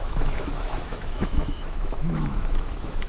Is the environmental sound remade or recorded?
remade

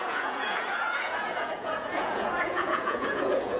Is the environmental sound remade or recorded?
remade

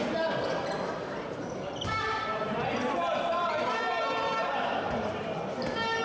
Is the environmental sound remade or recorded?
remade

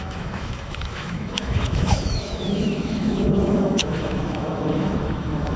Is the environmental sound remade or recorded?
remade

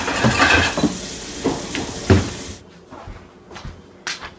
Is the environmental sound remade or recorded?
recorded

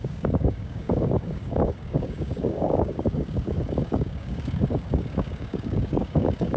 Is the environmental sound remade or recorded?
remade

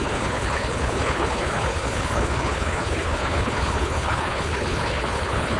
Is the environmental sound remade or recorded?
remade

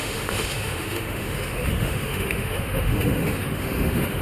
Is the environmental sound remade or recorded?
remade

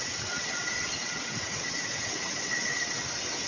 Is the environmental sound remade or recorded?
remade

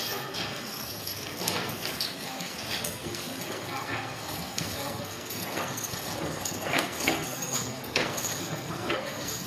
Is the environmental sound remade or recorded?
remade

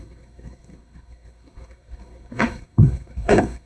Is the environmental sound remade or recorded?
remade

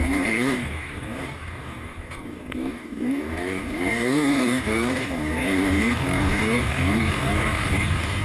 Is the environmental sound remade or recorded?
remade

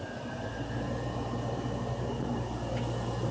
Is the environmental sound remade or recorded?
recorded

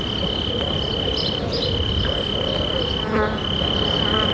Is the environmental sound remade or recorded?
recorded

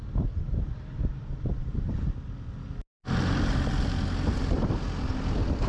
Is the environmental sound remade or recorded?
recorded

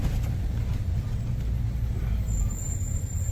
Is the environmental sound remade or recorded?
remade